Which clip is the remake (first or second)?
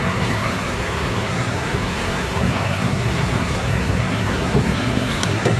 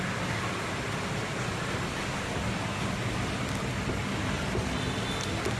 first